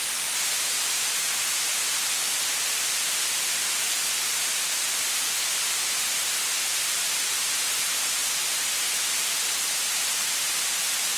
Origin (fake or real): fake